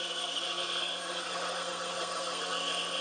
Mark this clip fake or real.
fake